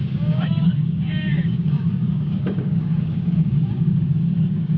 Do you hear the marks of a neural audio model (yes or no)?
yes